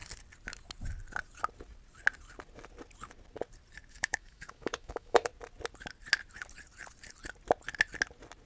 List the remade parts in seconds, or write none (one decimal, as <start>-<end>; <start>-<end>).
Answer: 3.9-5.3